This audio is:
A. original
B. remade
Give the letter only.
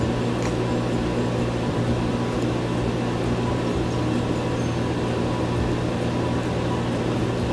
A